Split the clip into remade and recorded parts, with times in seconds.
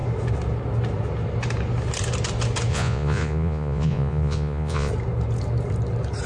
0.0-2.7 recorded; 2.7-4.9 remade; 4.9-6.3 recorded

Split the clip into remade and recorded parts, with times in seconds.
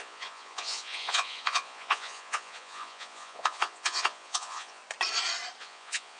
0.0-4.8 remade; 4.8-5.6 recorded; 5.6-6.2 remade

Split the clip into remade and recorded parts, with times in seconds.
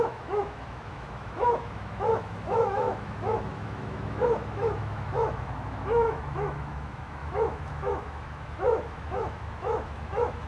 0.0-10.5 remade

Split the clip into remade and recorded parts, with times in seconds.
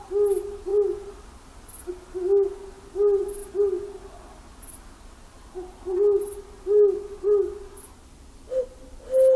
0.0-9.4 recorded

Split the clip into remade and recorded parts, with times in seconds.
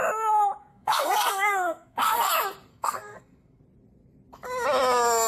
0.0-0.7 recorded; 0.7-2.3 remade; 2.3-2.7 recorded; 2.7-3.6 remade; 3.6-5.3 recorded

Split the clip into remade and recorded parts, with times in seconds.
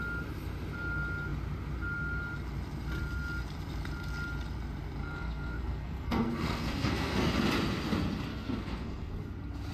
0.0-5.0 recorded; 5.0-7.3 remade; 7.3-8.3 recorded; 8.3-9.2 remade; 9.2-9.7 recorded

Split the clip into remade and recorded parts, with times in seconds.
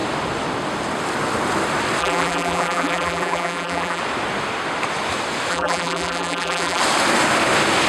0.0-2.0 recorded; 2.0-4.0 remade; 4.0-5.5 recorded; 5.5-6.8 remade; 6.8-7.9 recorded